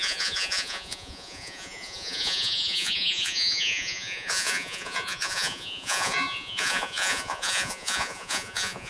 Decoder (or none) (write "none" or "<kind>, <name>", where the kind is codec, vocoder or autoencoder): vocoder, Vocos